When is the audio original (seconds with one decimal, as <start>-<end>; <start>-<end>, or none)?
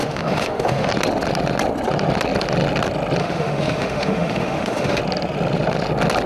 0.9-3.2; 5.0-6.3